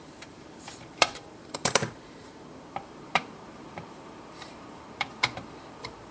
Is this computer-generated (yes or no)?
yes